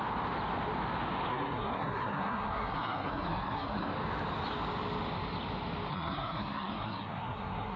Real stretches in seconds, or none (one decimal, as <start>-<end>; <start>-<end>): 0.0-1.3; 3.9-5.9